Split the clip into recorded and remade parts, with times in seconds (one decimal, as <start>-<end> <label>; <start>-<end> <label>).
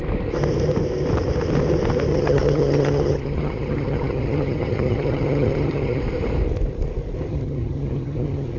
0.0-2.1 recorded; 2.1-6.0 remade; 6.0-7.3 recorded; 7.3-8.6 remade